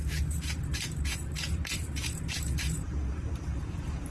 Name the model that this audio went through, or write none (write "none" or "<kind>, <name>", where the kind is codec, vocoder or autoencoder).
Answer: vocoder, BigVGAN v2